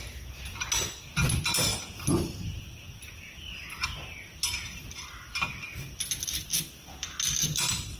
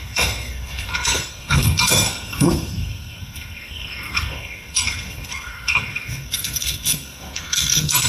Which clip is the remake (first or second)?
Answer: second